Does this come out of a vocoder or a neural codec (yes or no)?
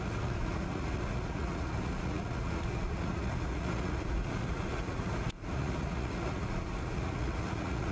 yes